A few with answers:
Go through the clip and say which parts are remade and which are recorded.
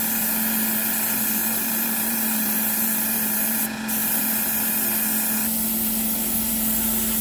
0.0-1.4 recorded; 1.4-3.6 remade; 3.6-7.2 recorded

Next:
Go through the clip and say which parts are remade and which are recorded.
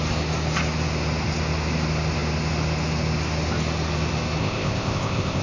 0.0-4.4 recorded; 4.4-5.4 remade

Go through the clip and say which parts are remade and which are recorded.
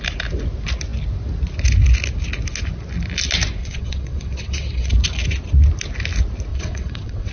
0.0-3.6 recorded; 3.6-4.9 remade; 4.9-6.5 recorded; 6.5-7.3 remade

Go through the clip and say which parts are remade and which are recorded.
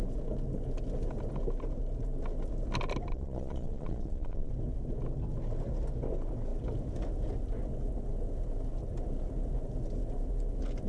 0.0-3.1 recorded; 3.1-4.5 remade; 4.5-10.9 recorded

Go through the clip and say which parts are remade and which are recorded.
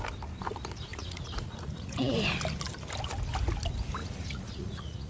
0.0-0.9 recorded; 0.9-2.1 remade; 2.1-4.0 recorded; 4.0-5.1 remade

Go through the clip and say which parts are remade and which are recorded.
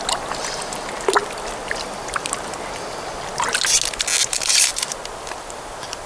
0.0-6.1 recorded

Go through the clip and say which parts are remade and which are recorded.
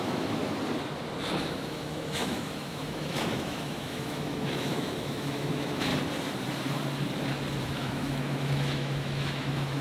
0.0-0.4 remade; 0.4-1.4 recorded; 1.4-5.9 remade; 5.9-7.6 recorded; 7.6-9.8 remade